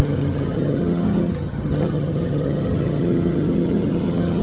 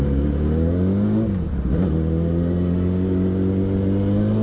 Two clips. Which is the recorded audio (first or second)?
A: second